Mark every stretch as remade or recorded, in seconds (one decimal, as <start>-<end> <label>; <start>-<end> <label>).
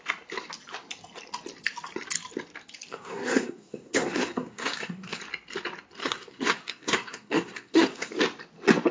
0.0-2.9 recorded; 2.9-5.2 remade; 5.2-6.0 recorded; 6.0-8.1 remade; 8.1-8.9 recorded